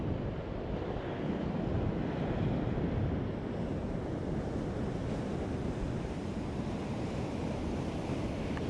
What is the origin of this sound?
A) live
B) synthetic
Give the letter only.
A